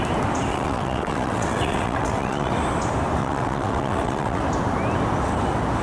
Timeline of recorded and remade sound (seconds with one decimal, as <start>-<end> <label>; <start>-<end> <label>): 0.0-0.5 recorded; 0.5-2.5 remade; 2.5-3.2 recorded; 3.2-4.4 remade; 4.4-5.8 recorded

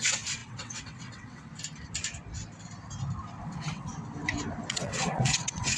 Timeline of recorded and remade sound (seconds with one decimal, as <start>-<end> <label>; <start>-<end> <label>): 0.0-1.5 remade; 1.5-3.4 recorded; 3.4-3.9 remade; 3.9-4.7 recorded; 4.7-5.8 remade

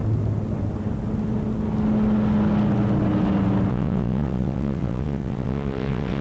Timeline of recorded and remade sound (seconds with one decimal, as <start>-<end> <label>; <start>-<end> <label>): 0.0-3.7 recorded; 3.7-6.2 remade